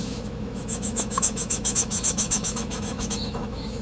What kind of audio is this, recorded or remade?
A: remade